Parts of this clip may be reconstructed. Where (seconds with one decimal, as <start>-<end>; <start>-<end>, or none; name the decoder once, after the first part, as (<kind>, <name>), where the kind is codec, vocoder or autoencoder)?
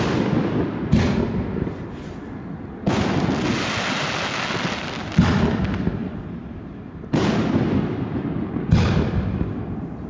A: 6.0-7.3 (vocoder, BigVGAN v2)